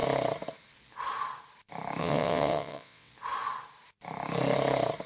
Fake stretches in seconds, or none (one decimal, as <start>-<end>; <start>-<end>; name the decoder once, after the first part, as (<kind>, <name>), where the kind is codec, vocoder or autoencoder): 2.0-3.1 (vocoder, WaveNeXt)